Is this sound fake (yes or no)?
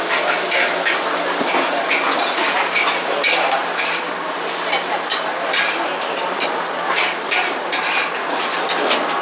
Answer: no